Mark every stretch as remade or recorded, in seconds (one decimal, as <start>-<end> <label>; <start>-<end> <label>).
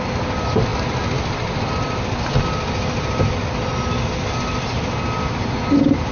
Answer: 0.0-6.1 recorded